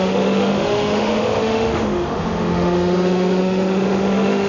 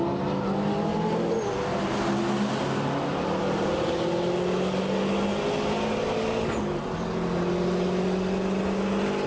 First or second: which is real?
second